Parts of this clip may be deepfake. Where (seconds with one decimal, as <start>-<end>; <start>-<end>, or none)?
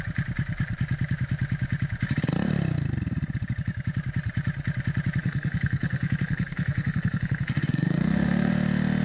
5.2-8.5